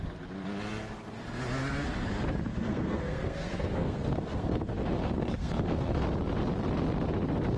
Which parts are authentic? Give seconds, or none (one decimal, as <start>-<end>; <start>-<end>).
0.0-2.5; 6.0-7.6